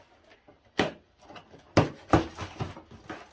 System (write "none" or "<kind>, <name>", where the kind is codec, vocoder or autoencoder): none